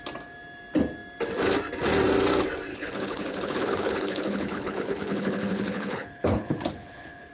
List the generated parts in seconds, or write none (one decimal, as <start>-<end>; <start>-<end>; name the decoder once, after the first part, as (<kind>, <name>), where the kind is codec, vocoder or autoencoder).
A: 2.7-7.3 (codec, HILCodec)